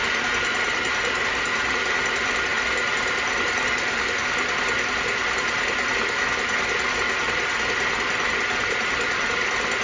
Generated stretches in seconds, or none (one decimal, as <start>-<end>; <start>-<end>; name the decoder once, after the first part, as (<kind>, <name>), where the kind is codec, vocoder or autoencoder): none